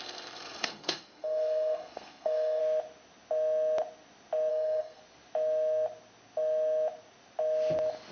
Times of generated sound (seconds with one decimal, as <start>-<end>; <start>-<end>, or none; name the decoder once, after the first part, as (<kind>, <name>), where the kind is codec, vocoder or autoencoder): 0.0-2.6 (codec, SNAC); 4.5-5.0